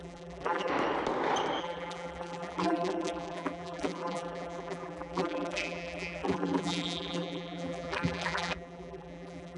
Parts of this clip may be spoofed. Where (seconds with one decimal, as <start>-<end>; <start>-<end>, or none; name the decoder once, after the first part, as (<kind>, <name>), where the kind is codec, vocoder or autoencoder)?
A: 0.0-0.7 (vocoder, BigVGAN v2); 1.6-9.6